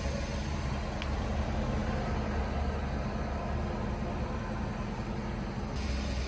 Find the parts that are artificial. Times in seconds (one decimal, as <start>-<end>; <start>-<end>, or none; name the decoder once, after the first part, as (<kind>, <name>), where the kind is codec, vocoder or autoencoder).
none